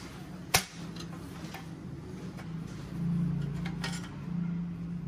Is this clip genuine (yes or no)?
yes